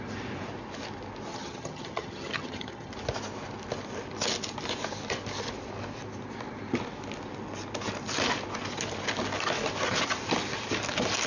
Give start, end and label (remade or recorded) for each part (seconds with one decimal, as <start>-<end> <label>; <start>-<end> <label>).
0.0-1.3 recorded; 1.3-2.9 remade; 2.9-11.3 recorded